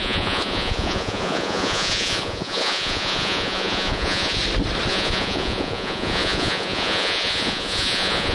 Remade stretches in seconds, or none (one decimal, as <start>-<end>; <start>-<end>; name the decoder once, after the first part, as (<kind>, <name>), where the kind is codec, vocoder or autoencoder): 0.0-4.4 (vocoder, Vocos); 4.9-8.3